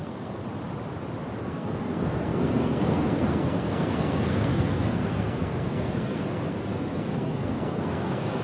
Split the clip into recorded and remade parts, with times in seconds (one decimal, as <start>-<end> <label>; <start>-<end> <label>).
0.0-0.4 remade; 0.4-1.4 recorded; 1.4-8.4 remade